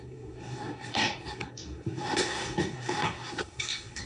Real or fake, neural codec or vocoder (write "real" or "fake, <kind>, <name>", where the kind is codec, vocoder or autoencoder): fake, codec, SNAC